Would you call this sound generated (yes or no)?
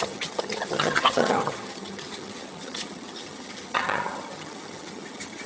yes